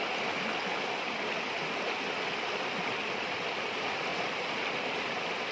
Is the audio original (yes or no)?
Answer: yes